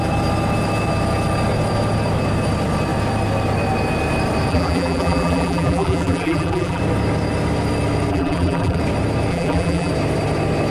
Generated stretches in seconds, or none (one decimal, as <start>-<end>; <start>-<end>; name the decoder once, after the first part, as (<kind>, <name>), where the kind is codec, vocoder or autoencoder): 4.5-6.8 (vocoder, BigVGAN v2); 8.1-8.8; 9.3-9.9